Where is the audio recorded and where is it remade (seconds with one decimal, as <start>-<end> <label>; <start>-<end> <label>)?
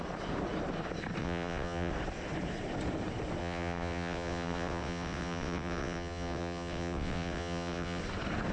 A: 0.0-1.2 recorded; 1.2-1.9 remade; 1.9-3.4 recorded; 3.4-8.0 remade; 8.0-8.5 recorded